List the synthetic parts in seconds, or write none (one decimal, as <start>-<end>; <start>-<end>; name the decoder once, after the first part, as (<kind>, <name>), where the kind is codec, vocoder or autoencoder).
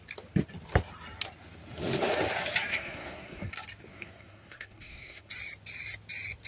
2.7-3.5 (codec, SNAC); 3.9-5.3